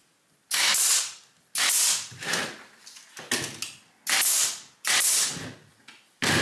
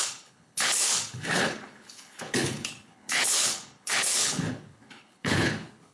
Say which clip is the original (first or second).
first